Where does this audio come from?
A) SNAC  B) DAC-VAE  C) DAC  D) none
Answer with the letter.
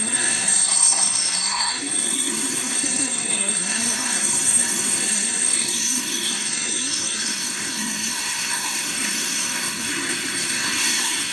A